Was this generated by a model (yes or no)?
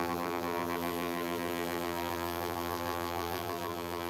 yes